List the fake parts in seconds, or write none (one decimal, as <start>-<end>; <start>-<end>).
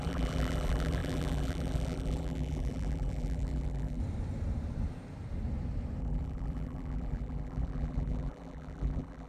0.0-4.0; 6.0-9.3